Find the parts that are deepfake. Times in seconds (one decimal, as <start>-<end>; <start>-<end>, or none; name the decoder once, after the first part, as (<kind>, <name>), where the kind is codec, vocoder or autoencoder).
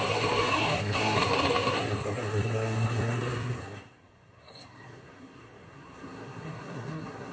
0.0-7.3 (codec, SNAC)